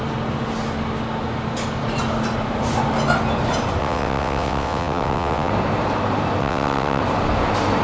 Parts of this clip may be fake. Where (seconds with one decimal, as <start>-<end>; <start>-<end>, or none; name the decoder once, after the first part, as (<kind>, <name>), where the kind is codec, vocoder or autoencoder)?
3.8-5.5 (vocoder, WaveNeXt); 6.4-7.0